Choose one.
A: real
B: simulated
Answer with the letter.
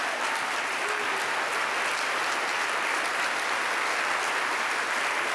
A